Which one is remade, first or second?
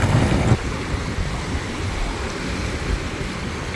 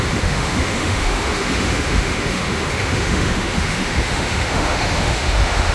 second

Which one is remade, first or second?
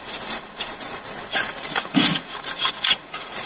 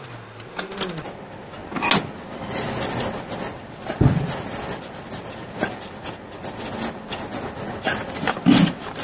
first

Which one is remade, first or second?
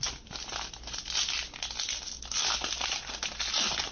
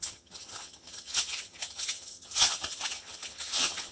second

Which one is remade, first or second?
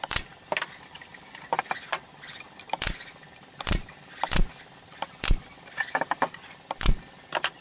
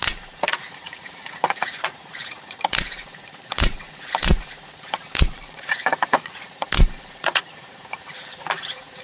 second